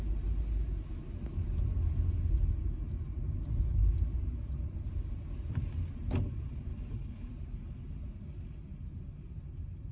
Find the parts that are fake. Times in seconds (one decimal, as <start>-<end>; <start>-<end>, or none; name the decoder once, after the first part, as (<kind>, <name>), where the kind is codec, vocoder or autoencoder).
6.7-7.3 (codec, HILCodec)

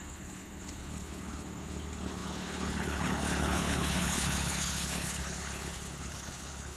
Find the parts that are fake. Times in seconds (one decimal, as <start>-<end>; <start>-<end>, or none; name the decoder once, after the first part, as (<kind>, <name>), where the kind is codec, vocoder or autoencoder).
0.0-6.8 (codec, HILCodec)

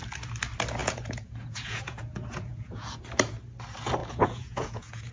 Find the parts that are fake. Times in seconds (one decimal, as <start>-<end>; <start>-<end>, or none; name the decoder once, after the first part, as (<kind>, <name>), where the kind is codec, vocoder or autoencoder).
0.8-3.0 (vocoder, Vocos); 4.0-5.1

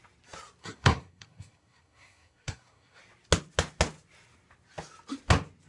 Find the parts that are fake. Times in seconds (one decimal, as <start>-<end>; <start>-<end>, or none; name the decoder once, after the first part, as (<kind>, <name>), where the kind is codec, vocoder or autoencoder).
0.6-3.0 (codec, SNAC)

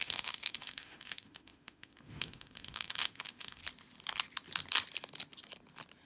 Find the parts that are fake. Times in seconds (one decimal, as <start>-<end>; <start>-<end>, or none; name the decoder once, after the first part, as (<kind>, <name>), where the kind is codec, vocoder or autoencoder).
0.0-3.6 (autoencoder, DAC-VAE)

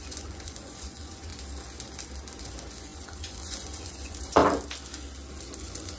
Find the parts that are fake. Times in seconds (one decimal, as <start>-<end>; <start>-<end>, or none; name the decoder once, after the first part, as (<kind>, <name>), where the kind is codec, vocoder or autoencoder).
0.0-1.3 (vocoder, Vocos); 2.4-4.4; 5.6-6.0

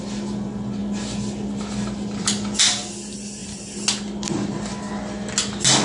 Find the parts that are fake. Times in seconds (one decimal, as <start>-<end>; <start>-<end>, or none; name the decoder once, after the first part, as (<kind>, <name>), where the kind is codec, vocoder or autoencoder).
none

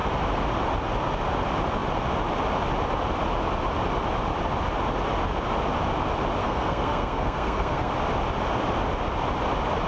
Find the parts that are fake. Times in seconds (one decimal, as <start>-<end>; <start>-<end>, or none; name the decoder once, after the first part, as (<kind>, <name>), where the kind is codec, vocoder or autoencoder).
6.4-7.9 (codec, SNAC)